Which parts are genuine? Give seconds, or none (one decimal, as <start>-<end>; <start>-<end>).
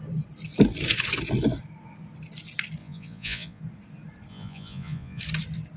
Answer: 0.0-2.8; 3.6-4.3; 5.2-5.8